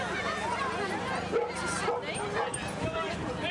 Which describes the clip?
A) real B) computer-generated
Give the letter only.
A